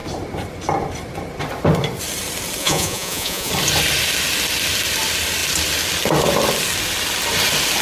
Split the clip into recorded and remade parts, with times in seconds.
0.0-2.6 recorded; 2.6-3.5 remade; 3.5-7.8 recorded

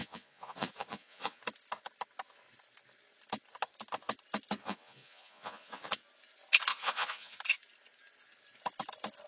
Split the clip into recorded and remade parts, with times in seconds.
0.0-1.4 remade; 1.4-4.6 recorded; 4.6-5.9 remade; 5.9-6.7 recorded; 6.7-7.4 remade; 7.4-9.3 recorded

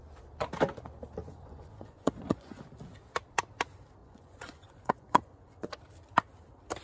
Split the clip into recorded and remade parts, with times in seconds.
0.0-1.2 recorded; 1.2-2.6 remade; 2.6-4.0 recorded; 4.0-5.8 remade; 5.8-6.8 recorded

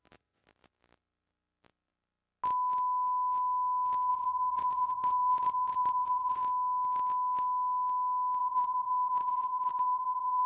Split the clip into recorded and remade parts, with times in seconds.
0.0-0.5 remade; 0.5-4.1 recorded; 4.1-6.4 remade; 6.4-8.4 recorded; 8.4-10.5 remade